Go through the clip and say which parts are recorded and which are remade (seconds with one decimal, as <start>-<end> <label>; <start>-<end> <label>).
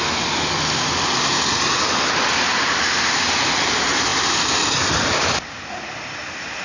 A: 0.0-4.1 recorded; 4.1-5.4 remade; 5.4-6.6 recorded